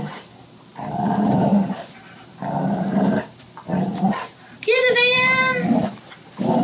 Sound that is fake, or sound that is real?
fake